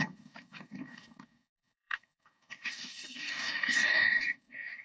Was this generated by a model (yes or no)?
yes